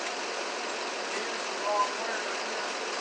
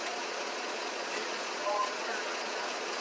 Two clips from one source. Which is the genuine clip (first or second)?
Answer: first